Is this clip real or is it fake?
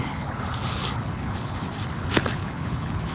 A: fake